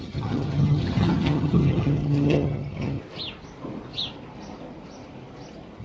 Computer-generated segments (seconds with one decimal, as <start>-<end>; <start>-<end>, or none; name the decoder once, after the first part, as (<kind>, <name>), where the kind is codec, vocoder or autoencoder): 0.0-3.0 (vocoder, HiFi-GAN)